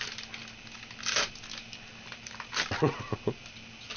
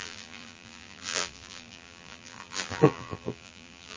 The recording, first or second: first